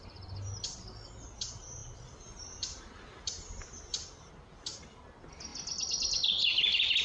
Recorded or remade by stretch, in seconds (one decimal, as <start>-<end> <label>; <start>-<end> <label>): 0.0-7.0 recorded